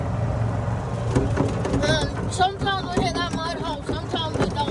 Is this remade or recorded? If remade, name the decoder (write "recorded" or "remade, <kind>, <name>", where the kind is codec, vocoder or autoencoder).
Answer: recorded